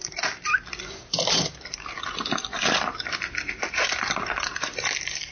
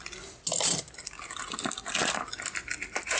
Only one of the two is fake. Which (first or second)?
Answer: first